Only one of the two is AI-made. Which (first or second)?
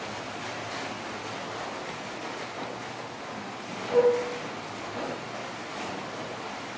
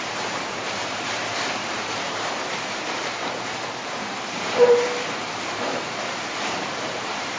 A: second